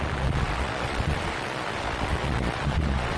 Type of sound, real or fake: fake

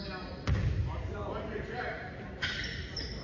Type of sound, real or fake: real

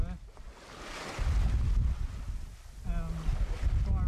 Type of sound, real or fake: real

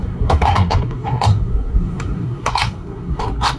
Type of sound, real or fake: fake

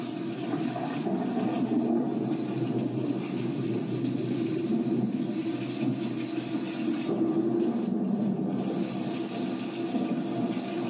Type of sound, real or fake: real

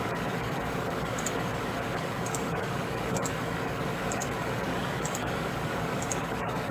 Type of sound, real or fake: fake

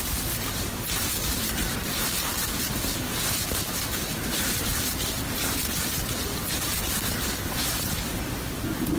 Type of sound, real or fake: real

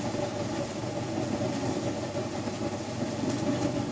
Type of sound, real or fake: real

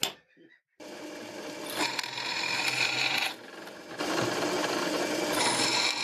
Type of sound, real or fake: real